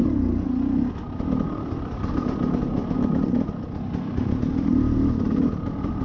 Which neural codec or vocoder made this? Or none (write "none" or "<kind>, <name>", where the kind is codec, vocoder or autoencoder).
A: none